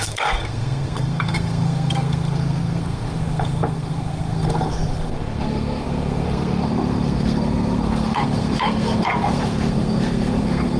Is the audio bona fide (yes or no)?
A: no